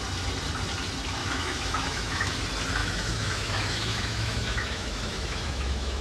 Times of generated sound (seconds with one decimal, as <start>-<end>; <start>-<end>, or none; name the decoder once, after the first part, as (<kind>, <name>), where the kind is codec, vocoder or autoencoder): 1.2-2.4 (autoencoder, DAC-VAE); 2.8-6.0